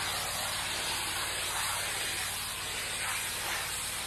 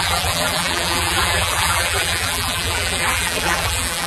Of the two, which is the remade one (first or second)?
second